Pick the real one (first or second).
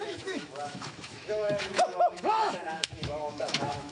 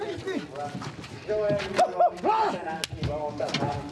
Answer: second